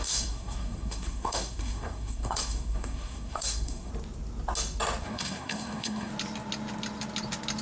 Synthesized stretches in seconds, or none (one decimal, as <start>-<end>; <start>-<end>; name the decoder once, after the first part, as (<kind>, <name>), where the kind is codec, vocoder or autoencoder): 0.0-3.9 (codec, SNAC); 5.0-6.1